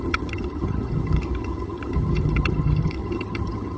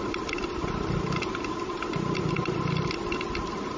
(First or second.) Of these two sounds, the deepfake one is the first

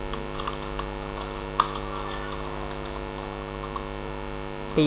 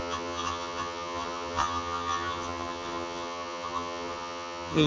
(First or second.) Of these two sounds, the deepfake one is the second